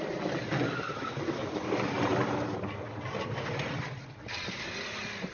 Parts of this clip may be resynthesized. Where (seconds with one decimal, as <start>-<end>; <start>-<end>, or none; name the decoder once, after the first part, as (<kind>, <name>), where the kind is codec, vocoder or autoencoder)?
none